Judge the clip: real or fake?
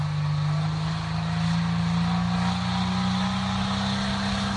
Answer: real